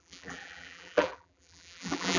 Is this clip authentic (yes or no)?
no